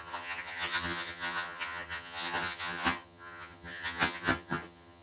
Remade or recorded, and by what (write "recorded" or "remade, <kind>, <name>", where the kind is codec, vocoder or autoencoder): remade, vocoder, HiFi-GAN